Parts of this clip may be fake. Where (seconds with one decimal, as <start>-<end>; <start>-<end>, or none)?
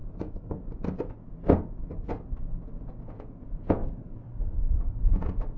2.4-3.8; 4.6-5.6